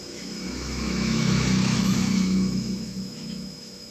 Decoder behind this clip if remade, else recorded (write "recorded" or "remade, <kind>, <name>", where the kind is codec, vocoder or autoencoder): remade, autoencoder, DAC-VAE